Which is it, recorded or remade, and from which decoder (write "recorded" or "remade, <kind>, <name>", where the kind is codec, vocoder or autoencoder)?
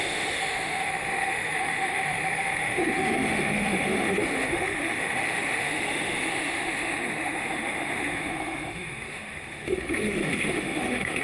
remade, autoencoder, DAC-VAE